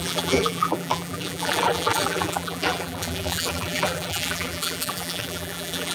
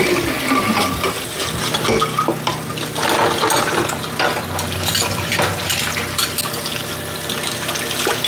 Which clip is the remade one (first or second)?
first